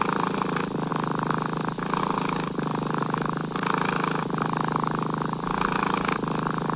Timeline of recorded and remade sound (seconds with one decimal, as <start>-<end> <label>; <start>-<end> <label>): 0.0-6.8 recorded